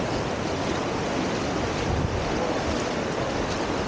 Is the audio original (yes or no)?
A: yes